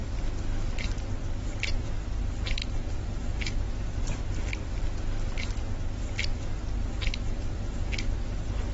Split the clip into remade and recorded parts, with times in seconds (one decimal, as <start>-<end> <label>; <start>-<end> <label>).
0.0-8.7 recorded